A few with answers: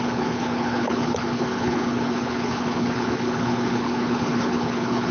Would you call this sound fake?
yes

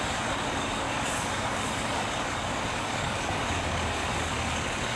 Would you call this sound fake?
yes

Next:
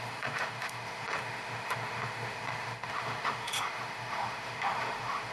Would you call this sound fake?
yes